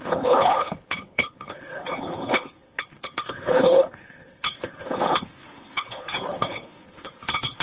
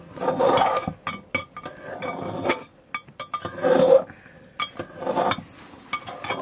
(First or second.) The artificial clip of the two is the first